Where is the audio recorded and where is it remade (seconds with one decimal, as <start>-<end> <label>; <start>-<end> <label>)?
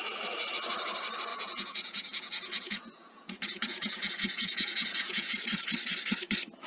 0.0-1.3 recorded; 1.3-5.3 remade; 5.3-6.7 recorded